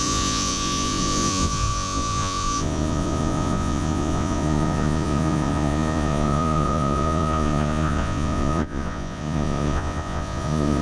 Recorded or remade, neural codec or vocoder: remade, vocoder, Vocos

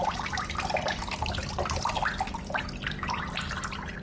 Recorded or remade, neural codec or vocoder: recorded